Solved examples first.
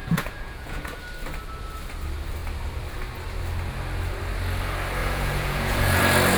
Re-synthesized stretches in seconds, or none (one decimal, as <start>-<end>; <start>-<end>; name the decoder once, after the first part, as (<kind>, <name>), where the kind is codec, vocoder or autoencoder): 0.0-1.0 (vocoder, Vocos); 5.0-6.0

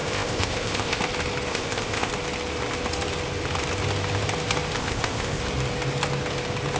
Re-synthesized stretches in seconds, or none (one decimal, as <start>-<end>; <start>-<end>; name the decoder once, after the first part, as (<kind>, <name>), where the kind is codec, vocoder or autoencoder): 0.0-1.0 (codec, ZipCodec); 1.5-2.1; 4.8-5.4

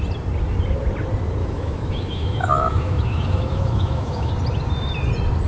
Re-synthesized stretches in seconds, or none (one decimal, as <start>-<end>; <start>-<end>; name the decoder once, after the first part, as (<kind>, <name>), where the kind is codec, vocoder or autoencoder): 1.4-4.3 (autoencoder, DAC-VAE)